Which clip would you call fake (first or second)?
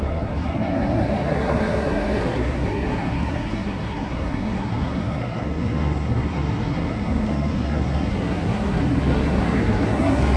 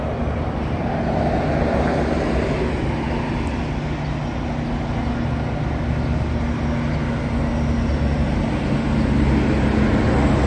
first